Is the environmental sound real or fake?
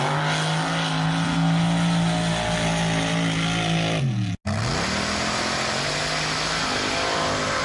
real